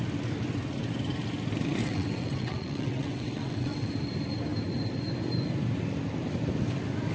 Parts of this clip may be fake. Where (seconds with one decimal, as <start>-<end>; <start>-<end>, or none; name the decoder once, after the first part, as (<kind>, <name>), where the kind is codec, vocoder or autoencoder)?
1.8-3.9 (vocoder, WaveNeXt)